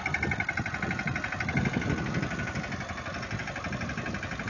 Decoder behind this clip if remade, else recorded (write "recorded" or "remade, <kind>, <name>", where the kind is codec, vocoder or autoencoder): recorded